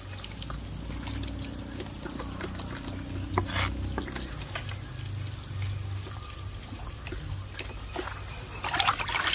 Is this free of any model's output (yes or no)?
yes